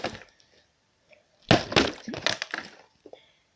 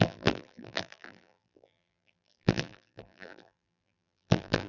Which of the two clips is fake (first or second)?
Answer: second